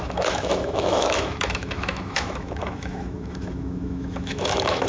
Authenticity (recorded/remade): remade